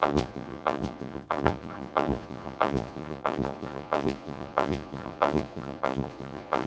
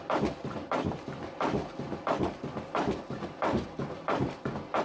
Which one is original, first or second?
second